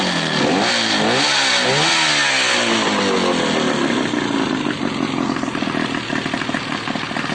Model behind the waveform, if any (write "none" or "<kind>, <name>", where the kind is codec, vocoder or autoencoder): none